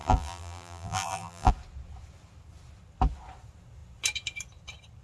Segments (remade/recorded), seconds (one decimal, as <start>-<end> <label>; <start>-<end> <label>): 0.0-1.5 remade; 1.5-5.0 recorded